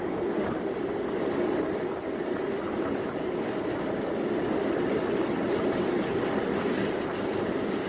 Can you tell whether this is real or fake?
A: real